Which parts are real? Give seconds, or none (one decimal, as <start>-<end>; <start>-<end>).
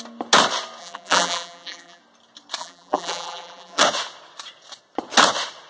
0.0-0.8; 2.0-2.6; 3.8-5.7